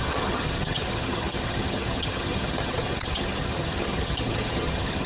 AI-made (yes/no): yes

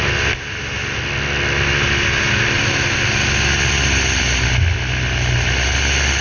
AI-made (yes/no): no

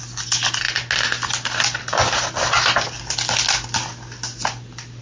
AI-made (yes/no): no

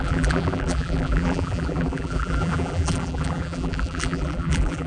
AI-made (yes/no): yes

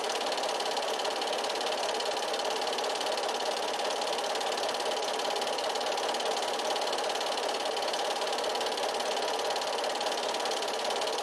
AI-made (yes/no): no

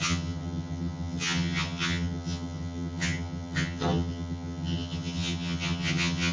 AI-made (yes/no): yes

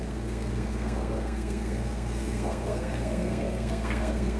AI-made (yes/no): yes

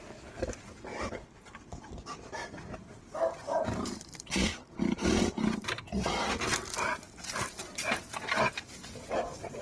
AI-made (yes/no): no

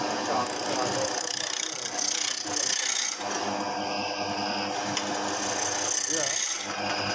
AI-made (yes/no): no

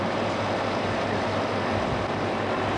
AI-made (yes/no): no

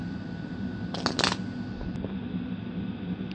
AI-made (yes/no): no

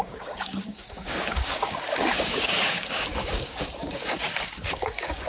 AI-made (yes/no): yes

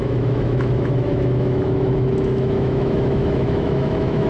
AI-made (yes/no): yes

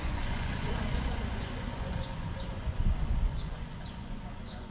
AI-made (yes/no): yes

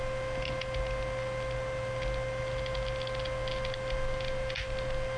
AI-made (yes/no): no